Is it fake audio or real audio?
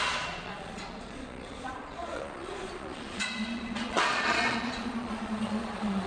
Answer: fake